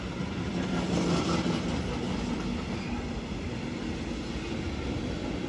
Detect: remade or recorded recorded